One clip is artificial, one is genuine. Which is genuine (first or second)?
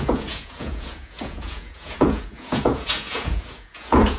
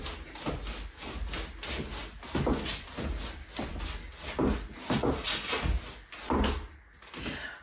second